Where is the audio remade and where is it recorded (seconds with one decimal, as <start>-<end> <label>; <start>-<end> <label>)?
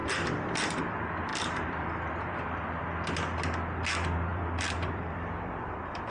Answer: 0.0-0.8 remade; 0.8-1.3 recorded; 1.3-2.8 remade; 2.8-4.3 recorded; 4.3-6.1 remade